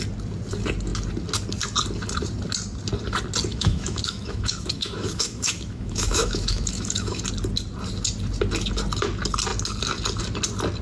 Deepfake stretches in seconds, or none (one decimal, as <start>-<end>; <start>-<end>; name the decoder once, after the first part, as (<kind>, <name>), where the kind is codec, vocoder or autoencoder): 3.5-7.2 (autoencoder, DAC-VAE)